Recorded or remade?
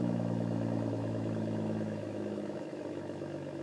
remade